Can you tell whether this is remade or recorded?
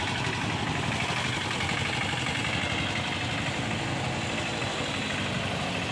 recorded